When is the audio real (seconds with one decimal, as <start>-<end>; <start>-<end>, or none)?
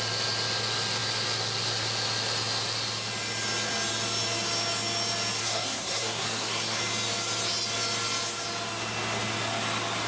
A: 0.0-5.4; 6.8-10.1